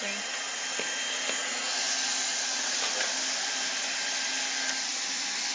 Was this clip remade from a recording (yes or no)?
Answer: no